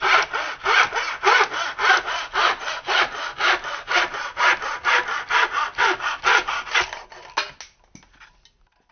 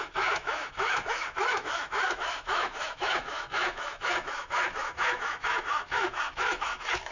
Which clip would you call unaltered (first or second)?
first